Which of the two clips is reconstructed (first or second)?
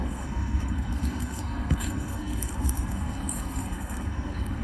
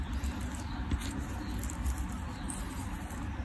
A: first